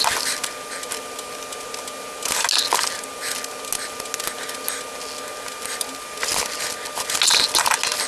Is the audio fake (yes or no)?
no